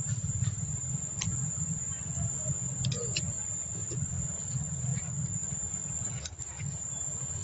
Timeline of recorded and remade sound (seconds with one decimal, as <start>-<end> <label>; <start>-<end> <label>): 0.0-7.4 recorded